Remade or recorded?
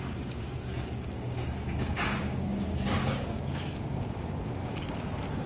remade